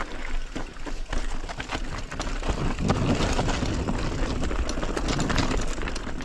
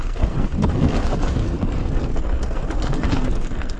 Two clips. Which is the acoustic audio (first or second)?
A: first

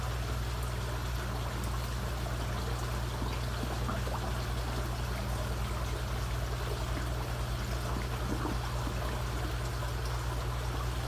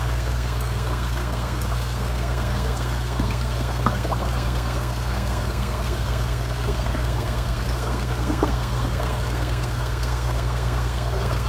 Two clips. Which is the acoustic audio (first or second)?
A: first